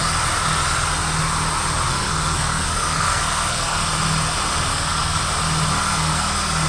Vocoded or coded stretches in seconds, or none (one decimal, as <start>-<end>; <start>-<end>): 1.9-3.8; 4.7-5.2; 5.7-6.7